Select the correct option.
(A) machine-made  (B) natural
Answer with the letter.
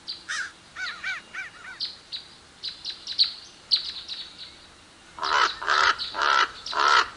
B